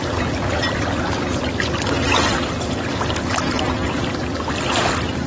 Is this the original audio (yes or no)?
yes